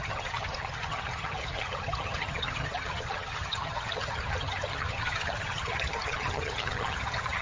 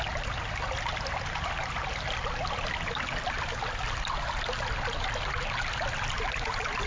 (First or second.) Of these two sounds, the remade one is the first